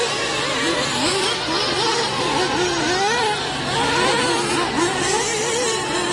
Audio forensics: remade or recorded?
recorded